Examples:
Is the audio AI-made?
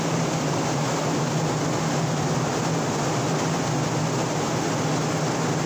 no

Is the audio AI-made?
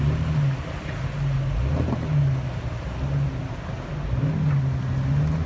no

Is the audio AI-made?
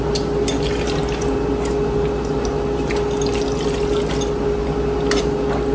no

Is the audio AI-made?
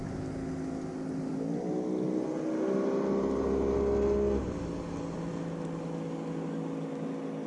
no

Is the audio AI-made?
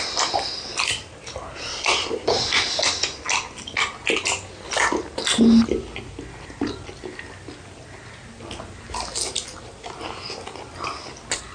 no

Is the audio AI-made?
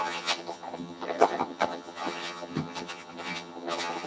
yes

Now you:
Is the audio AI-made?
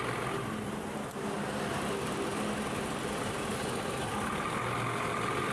no